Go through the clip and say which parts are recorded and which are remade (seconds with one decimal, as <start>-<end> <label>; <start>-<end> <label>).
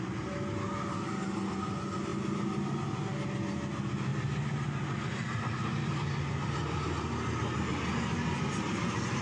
0.0-9.2 recorded